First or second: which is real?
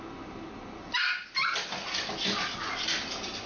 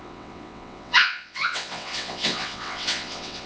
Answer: first